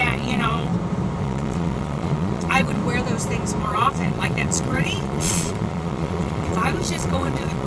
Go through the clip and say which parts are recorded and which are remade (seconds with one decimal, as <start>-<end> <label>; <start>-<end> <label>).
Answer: 0.0-0.7 remade; 0.7-1.2 recorded; 1.2-2.8 remade; 2.8-3.6 recorded; 3.6-7.7 remade